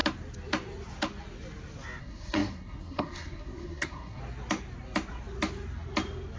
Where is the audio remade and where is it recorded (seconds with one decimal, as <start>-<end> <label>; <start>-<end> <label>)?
0.0-2.0 recorded; 2.0-4.2 remade; 4.2-6.4 recorded